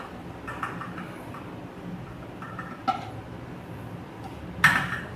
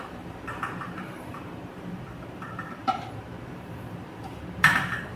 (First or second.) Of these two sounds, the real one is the first